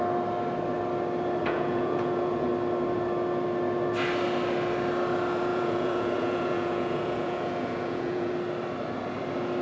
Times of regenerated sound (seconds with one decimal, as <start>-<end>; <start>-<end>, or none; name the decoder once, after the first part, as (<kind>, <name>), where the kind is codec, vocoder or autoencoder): 1.4-2.5 (vocoder, Vocos); 5.5-8.3